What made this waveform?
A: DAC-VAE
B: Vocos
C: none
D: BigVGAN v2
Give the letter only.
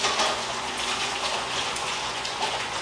B